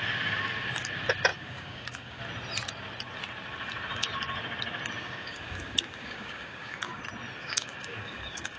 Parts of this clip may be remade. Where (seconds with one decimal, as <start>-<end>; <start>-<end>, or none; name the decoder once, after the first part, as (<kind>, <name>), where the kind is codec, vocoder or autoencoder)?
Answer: 1.3-2.2 (codec, DAC); 5.0-7.0; 7.4-8.6

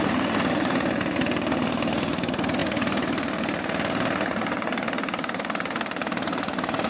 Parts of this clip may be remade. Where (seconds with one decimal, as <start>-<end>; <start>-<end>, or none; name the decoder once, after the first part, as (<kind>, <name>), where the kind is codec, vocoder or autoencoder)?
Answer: none